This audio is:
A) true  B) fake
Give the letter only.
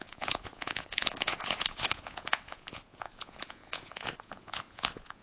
B